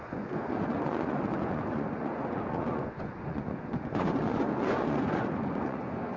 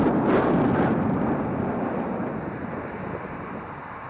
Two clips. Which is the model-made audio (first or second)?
first